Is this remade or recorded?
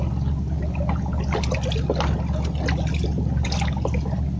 recorded